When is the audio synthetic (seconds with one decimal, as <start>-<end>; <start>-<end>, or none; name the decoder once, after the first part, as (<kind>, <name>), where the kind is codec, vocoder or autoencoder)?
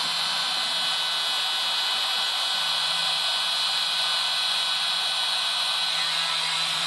0.0-0.6 (vocoder, Vocos); 1.8-6.9